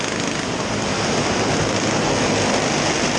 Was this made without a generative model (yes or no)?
yes